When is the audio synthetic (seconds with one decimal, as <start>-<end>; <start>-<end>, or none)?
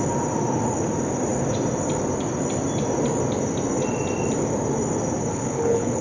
5.2-6.0